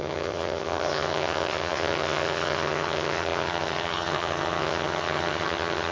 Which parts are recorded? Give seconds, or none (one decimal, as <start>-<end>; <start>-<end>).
none